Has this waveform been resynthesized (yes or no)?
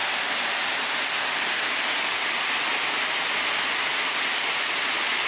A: no